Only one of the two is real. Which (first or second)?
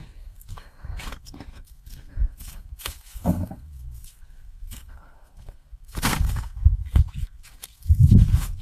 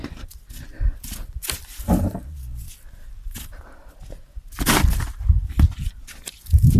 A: second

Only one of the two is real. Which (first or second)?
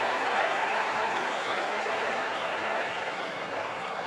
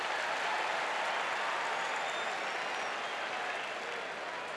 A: second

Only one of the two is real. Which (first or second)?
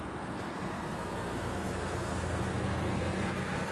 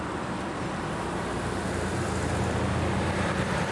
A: second